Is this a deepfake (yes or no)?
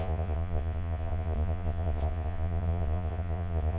yes